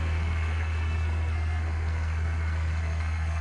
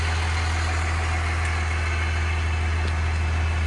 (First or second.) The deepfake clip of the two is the first